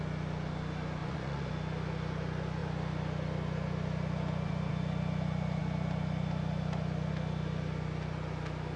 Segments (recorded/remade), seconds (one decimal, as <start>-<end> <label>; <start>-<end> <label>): 0.0-1.0 recorded; 1.0-1.5 remade; 1.5-8.8 recorded